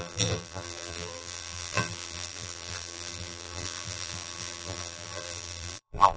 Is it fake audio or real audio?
fake